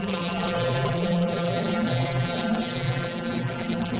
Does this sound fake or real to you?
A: fake